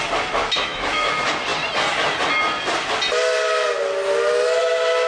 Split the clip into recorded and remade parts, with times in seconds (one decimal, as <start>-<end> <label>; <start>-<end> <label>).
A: 0.0-0.4 recorded; 0.4-1.1 remade; 1.1-5.1 recorded